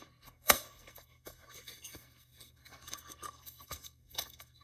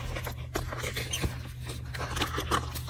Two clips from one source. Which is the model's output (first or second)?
first